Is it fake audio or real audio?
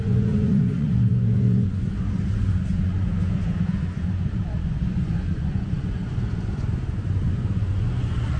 fake